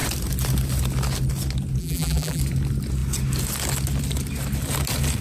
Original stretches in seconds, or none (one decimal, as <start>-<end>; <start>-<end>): 0.0-1.8; 2.4-5.2